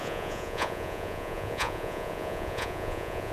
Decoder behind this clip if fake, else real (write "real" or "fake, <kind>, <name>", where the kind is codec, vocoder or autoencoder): fake, vocoder, Vocos